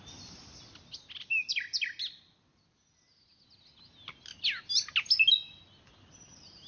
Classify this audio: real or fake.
real